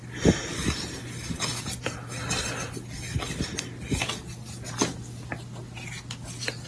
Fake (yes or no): no